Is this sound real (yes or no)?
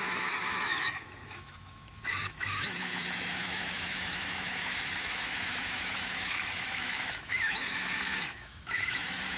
no